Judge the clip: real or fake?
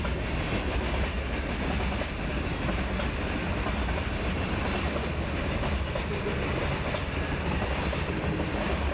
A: real